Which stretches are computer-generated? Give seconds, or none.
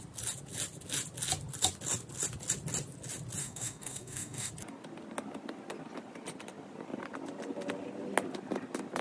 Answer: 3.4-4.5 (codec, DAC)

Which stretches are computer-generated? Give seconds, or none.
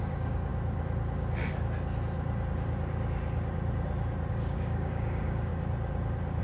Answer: 0.0-0.5 (codec, DAC); 4.3-5.5